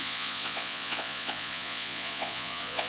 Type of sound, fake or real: fake